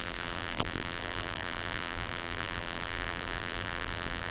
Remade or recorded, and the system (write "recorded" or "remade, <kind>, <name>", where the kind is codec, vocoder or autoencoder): remade, vocoder, BigVGAN v2